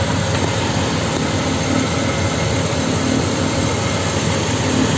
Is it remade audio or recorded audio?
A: recorded